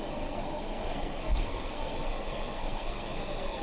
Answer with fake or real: fake